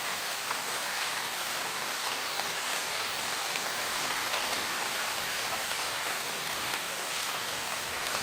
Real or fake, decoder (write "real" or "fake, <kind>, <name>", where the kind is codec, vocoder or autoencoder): fake, codec, DAC